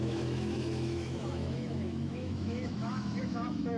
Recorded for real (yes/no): no